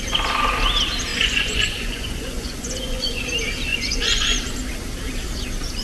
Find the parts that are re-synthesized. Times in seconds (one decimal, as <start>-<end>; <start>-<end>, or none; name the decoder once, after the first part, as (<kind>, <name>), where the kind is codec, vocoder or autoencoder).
1.1-3.2 (vocoder, Vocos); 3.7-4.4